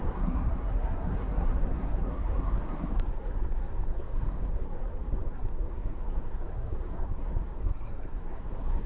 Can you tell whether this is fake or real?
fake